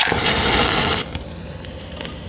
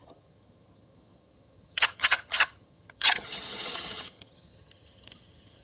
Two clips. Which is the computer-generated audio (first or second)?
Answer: second